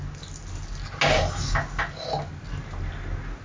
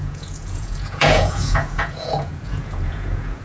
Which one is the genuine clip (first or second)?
first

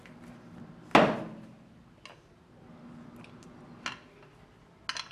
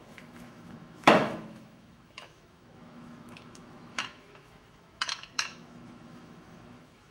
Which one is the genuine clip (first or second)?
first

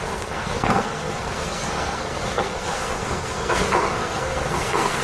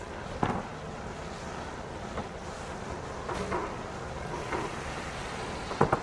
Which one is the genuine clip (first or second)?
second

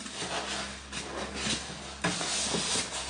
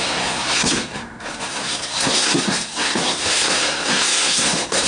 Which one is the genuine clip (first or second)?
first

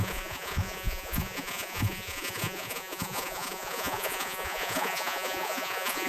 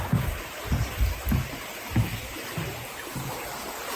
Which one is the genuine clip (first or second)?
second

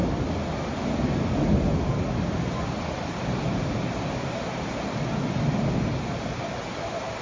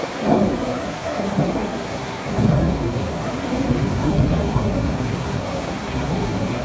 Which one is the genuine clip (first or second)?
first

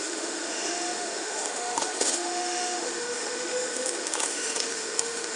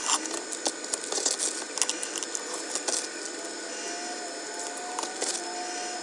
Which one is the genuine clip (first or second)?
second